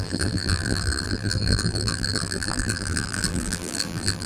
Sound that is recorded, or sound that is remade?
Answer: remade